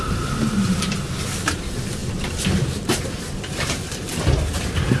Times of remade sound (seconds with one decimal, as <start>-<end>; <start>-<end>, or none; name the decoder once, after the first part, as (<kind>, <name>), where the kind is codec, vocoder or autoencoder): 0.0-2.0 (vocoder, BigVGAN v2); 2.6-5.0

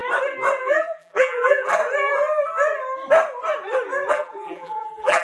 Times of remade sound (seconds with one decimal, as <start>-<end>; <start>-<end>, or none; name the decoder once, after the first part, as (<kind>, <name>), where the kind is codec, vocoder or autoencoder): 0.6-1.8 (vocoder, BigVGAN v2); 4.1-5.2

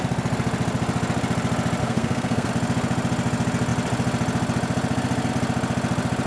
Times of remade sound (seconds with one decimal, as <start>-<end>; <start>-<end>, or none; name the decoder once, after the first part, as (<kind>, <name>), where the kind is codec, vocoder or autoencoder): 1.8-2.5 (codec, SNAC)

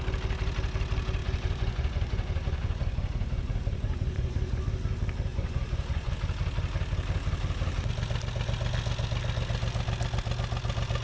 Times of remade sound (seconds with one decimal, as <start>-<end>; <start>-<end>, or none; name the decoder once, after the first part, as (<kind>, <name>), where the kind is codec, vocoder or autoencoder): 1.2-4.6 (vocoder, Vocos); 5.3-6.1

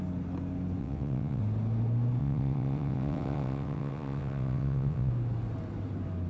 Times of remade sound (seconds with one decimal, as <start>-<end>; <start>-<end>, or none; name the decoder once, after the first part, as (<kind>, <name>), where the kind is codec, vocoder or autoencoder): 0.8-1.4 (vocoder, WaveNeXt); 2.2-5.1

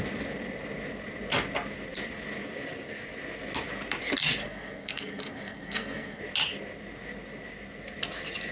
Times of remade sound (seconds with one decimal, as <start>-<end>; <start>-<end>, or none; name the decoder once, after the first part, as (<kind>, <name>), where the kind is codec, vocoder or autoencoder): 4.4-6.2 (codec, SNAC)